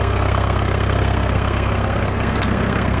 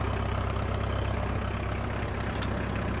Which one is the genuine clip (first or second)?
second